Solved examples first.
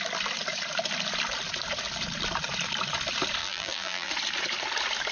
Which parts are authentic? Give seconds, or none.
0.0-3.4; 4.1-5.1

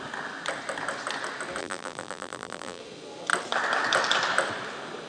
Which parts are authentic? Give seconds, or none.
0.0-1.6; 2.8-5.1

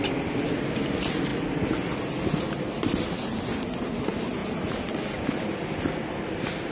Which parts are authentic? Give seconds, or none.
0.0-6.7

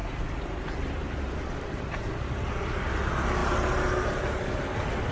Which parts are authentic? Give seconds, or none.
2.1-5.1

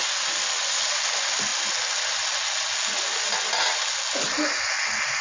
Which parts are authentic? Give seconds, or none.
0.0-5.2

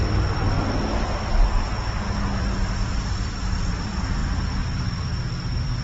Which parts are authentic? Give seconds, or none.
1.3-2.4

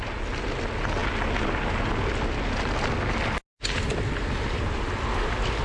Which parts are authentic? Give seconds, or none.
0.0-5.6

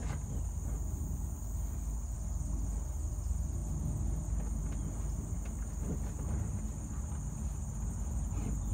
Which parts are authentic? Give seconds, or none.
0.0-8.7